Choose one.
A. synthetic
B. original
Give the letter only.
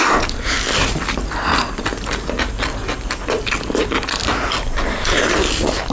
B